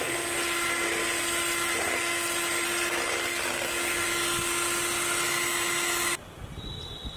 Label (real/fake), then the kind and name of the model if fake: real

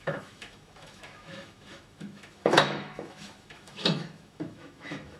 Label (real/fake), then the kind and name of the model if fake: fake, autoencoder, DAC-VAE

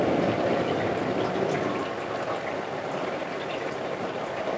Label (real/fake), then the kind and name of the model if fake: real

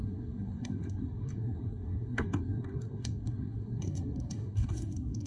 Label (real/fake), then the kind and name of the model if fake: fake, codec, SNAC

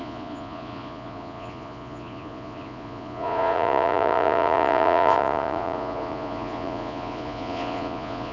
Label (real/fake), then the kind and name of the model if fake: fake, vocoder, Vocos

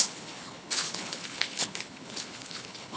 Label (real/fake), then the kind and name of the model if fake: fake, codec, HILCodec